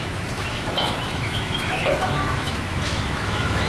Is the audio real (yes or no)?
no